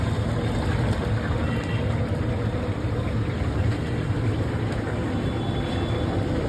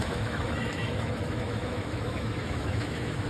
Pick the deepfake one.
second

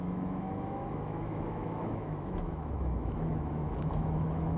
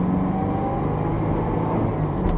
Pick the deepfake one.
first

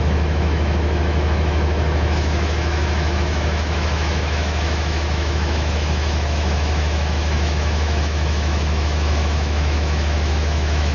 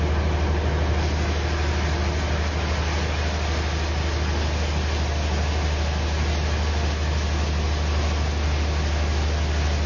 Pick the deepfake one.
first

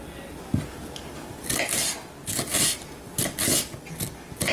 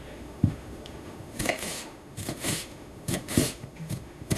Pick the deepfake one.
second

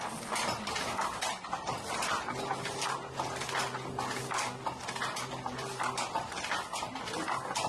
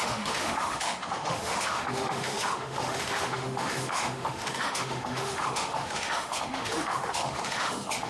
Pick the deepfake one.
second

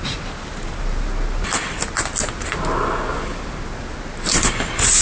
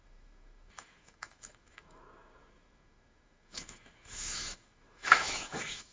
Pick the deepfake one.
second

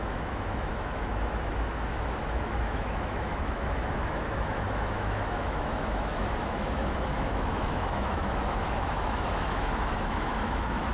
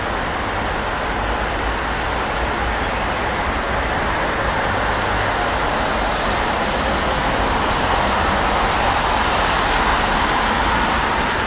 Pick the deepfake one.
first